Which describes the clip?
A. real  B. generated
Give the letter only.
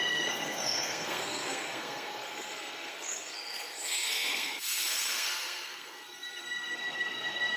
B